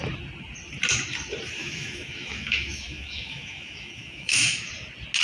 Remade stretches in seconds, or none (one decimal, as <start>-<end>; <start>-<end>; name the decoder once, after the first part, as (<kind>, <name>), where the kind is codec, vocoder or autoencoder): 1.6-4.7 (autoencoder, DAC-VAE)